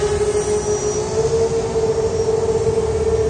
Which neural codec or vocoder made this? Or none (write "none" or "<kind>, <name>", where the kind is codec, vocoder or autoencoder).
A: none